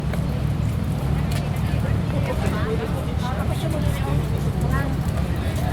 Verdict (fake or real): real